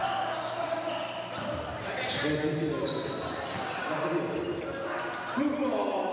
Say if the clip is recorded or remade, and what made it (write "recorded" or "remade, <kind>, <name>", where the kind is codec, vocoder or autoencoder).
recorded